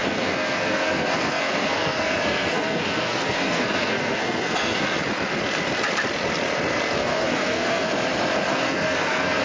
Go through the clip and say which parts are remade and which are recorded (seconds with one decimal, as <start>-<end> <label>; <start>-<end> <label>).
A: 0.0-4.8 remade; 4.8-7.0 recorded; 7.0-7.9 remade; 7.9-8.5 recorded; 8.5-9.4 remade